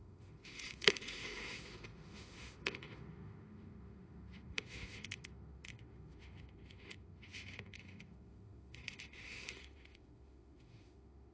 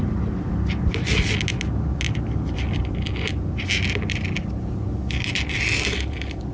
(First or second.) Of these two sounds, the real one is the second